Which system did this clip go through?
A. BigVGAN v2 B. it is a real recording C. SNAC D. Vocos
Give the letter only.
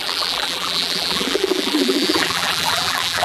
A